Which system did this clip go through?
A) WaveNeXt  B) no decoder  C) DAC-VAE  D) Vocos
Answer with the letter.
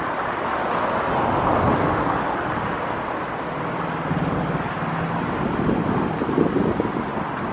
B